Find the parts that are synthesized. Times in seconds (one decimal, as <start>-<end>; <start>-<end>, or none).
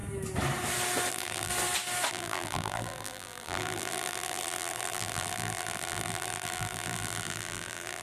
1.1-1.5; 2.1-8.0